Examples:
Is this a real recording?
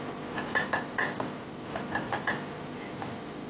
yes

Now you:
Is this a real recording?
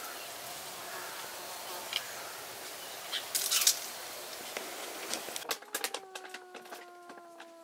yes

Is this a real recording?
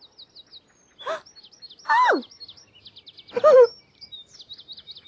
yes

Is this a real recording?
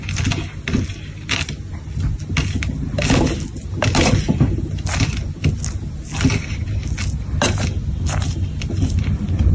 yes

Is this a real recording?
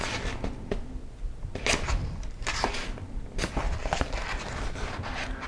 yes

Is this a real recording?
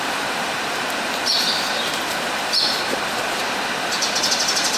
yes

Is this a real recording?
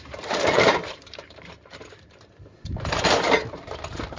no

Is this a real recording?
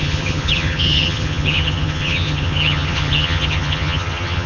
no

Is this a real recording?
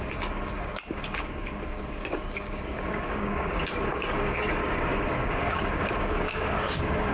no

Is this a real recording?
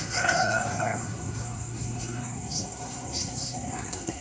no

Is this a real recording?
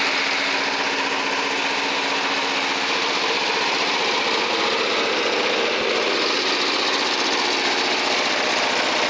yes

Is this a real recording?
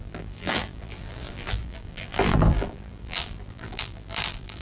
no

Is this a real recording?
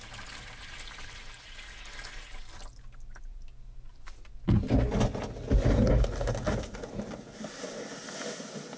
yes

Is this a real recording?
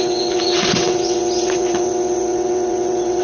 no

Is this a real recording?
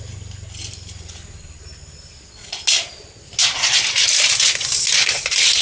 yes